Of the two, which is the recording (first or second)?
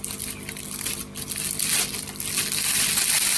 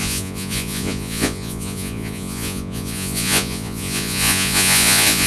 first